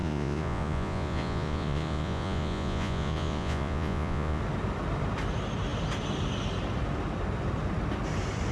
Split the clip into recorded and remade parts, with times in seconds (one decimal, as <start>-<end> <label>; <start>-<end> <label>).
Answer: 0.0-4.4 remade; 4.4-8.5 recorded